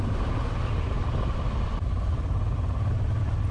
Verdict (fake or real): real